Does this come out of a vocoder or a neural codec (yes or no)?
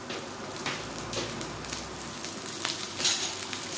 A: no